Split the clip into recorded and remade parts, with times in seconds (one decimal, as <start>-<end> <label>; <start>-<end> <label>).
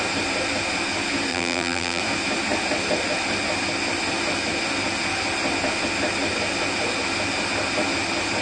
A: 0.0-1.3 recorded; 1.3-2.0 remade; 2.0-8.4 recorded